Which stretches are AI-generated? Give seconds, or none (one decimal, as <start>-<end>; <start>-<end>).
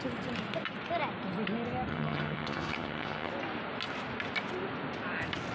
1.9-3.3